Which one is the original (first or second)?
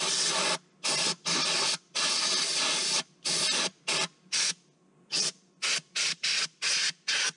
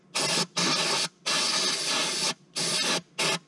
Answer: second